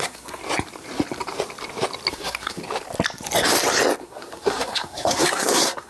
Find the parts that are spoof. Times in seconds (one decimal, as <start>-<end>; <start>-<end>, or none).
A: 0.0-0.4; 2.1-2.6; 4.0-5.9